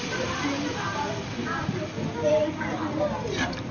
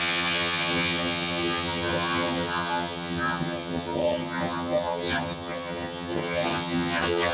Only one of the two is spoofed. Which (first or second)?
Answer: second